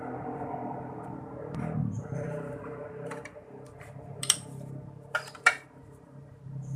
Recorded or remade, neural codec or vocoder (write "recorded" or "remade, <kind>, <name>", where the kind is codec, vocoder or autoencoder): remade, vocoder, BigVGAN v2